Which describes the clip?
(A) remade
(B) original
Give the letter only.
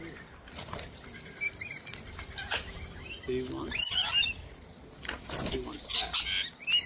B